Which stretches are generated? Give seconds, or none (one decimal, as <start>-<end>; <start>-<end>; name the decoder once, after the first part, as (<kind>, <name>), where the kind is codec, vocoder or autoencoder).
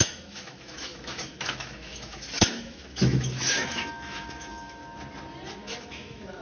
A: 0.0-4.8 (autoencoder, DAC-VAE); 5.5-6.4